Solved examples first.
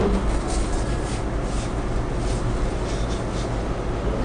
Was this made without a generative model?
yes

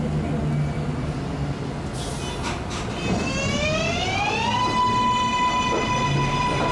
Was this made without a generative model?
yes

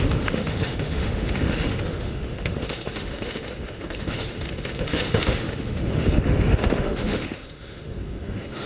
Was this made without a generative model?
no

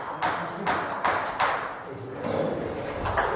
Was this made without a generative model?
yes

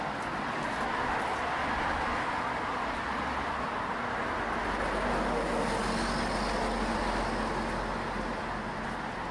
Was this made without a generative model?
yes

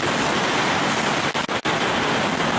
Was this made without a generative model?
yes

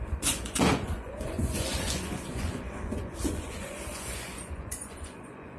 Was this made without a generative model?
no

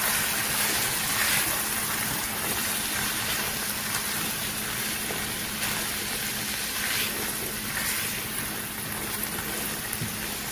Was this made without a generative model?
yes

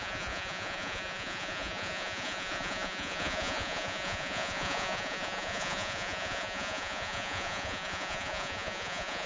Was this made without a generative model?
no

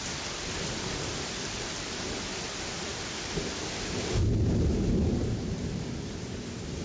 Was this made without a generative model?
yes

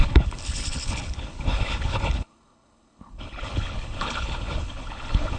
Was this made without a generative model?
no